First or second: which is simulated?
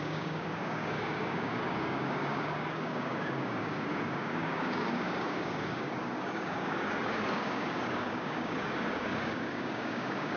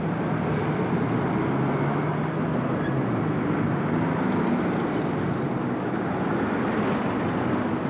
first